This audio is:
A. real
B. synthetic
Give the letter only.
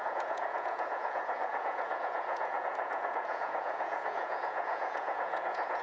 B